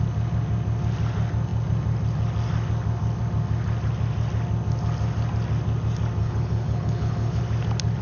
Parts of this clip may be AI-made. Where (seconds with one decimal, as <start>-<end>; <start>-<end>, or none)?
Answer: 6.2-7.4